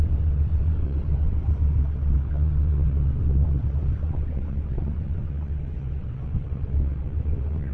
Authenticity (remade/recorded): remade